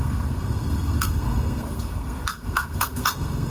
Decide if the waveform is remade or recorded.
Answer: remade